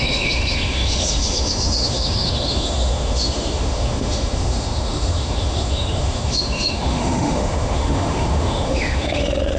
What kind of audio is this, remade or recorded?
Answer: remade